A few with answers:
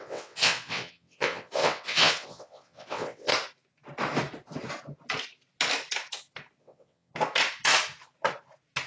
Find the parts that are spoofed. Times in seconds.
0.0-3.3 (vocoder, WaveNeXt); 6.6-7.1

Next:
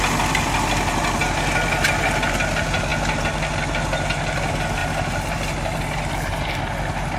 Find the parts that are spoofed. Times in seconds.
none

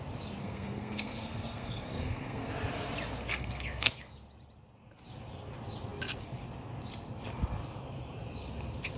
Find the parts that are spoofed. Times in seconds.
0.4-2.5 (codec, SNAC); 3.3-4.1